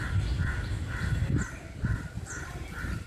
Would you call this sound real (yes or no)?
yes